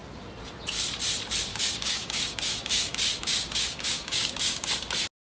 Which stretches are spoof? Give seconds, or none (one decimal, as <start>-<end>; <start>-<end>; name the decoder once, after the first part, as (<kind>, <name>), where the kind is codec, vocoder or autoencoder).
1.5-4.7 (codec, DAC)